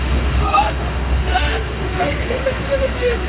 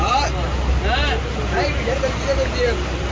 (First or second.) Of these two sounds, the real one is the second